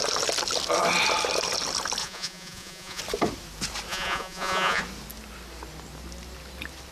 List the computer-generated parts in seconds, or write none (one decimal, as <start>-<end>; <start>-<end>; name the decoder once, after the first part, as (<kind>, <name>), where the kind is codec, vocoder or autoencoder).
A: 2.0-3.0 (vocoder, Vocos); 3.9-4.8